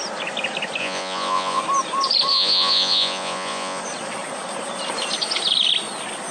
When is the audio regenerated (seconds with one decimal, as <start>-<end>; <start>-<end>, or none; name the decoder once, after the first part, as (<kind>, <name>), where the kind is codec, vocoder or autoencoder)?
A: 0.8-1.6 (vocoder, Vocos); 2.3-3.8